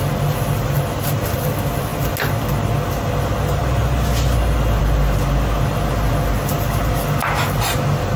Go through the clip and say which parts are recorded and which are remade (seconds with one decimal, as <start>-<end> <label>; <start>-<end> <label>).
0.0-8.2 recorded